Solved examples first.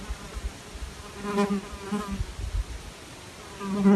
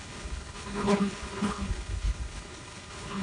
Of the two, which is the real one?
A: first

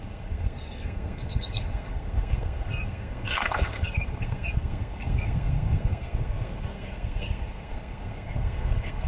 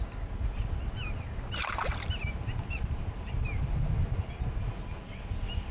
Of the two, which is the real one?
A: second